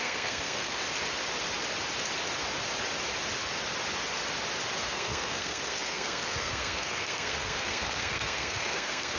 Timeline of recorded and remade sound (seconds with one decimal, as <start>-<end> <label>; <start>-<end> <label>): 0.0-0.8 remade; 0.8-4.8 recorded; 4.8-9.2 remade